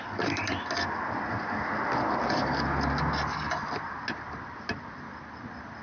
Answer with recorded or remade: recorded